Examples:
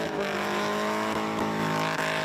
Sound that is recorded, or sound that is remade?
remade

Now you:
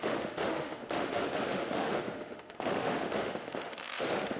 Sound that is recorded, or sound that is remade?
remade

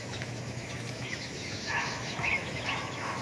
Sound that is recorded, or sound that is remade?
remade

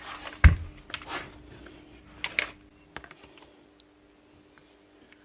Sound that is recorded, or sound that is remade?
recorded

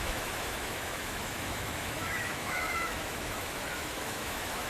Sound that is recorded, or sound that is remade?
remade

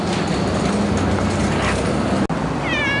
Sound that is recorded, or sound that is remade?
recorded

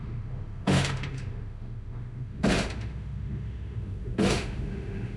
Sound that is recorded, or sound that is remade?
remade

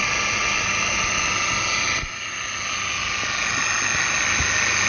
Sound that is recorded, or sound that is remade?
recorded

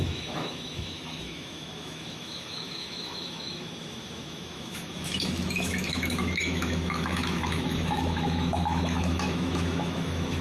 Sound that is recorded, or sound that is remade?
remade